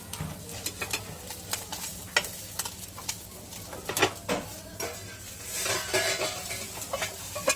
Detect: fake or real real